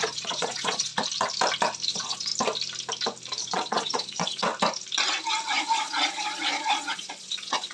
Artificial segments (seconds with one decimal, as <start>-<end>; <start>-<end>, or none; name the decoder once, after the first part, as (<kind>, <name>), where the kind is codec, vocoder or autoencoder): 0.0-0.9 (vocoder, Vocos); 1.9-2.3; 3.4-4.5; 5.6-7.7